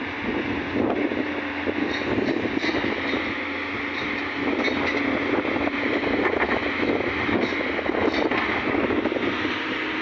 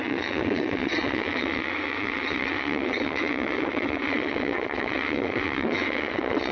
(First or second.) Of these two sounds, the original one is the first